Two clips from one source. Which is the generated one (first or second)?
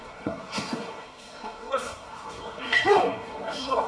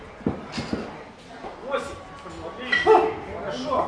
first